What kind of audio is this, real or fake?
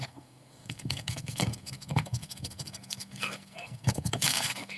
fake